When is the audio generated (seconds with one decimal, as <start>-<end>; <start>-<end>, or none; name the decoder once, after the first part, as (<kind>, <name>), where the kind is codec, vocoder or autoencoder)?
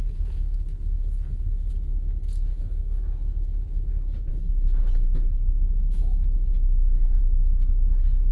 0.0-1.7 (codec, SNAC); 2.5-3.0